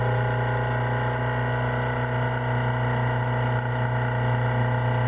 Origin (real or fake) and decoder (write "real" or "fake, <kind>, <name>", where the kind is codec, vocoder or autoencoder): real